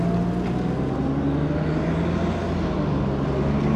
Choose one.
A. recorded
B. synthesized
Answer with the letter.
A